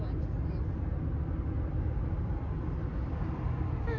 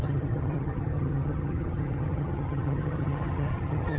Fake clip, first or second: second